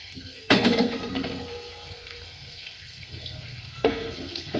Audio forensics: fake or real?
fake